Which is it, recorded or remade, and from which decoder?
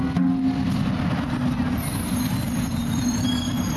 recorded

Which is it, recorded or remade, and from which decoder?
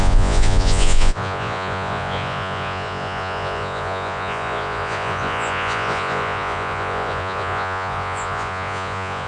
remade, vocoder, Vocos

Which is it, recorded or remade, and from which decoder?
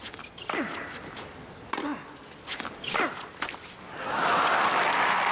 recorded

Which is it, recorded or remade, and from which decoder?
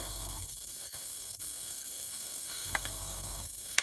remade, codec, SNAC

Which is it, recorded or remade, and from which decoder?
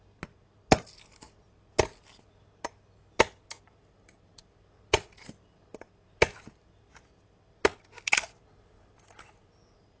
recorded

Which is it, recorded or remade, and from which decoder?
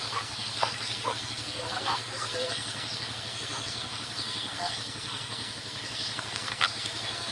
remade, codec, SNAC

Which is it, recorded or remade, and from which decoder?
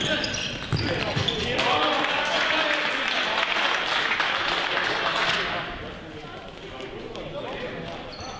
recorded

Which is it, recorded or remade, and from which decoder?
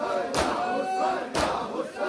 recorded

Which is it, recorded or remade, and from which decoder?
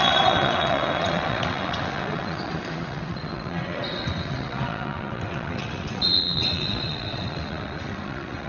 remade, vocoder, WaveNeXt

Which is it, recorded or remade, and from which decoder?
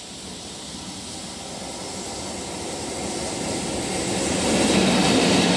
recorded